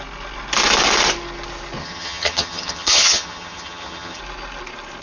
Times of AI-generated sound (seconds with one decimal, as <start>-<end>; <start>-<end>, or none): 1.8-4.2